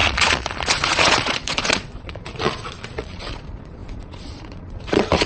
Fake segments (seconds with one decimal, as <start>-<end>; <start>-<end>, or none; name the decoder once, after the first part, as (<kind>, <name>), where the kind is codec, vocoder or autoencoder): 0.0-5.3 (vocoder, Vocos)